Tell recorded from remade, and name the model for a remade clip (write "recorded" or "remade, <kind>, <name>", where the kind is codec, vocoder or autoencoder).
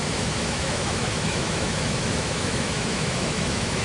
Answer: remade, autoencoder, DAC-VAE